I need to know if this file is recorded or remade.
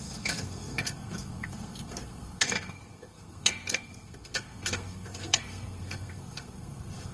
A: remade